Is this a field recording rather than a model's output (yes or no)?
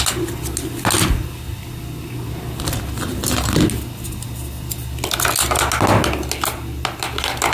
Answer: yes